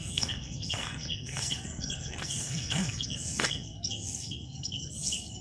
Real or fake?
fake